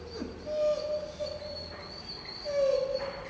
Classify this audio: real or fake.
real